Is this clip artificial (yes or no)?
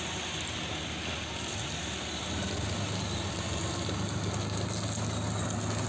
no